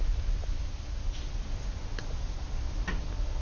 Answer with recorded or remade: recorded